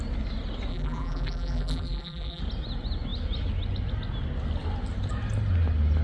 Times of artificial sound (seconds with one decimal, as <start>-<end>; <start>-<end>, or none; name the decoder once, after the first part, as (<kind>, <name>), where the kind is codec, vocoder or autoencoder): 0.7-2.4 (vocoder, BigVGAN v2)